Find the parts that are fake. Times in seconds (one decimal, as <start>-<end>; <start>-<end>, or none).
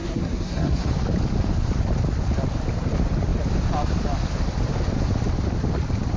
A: 0.0-0.9